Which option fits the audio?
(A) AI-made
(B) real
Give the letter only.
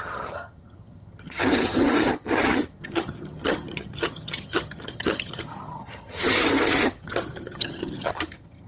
A